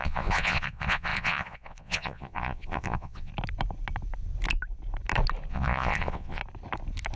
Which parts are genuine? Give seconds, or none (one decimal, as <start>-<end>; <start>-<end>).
3.3-5.5; 6.4-7.2